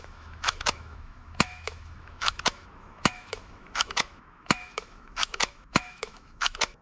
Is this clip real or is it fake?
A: fake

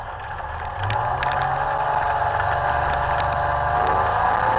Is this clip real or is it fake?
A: real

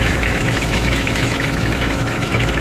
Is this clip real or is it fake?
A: fake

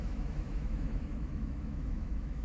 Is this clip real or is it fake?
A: fake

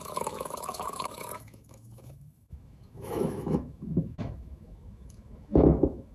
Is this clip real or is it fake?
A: fake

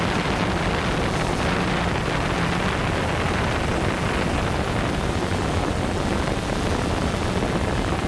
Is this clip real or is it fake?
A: real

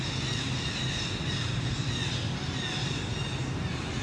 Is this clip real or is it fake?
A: real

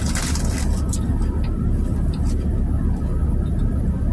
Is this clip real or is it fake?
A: real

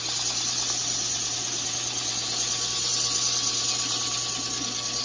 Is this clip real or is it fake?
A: real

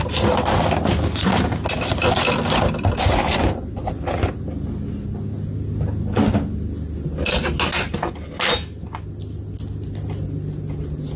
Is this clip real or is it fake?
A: real